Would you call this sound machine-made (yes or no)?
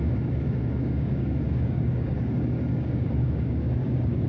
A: yes